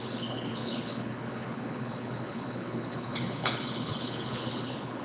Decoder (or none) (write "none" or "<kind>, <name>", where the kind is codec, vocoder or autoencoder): codec, HILCodec